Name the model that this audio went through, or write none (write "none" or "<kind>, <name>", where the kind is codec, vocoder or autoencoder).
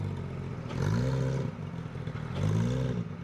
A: none